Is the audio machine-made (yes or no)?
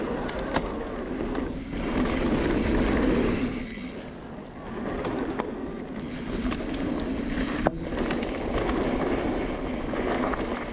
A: no